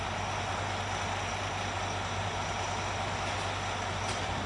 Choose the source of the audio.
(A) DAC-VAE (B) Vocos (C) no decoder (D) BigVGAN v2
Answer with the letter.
C